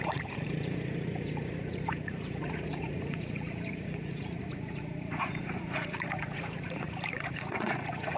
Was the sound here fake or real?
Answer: fake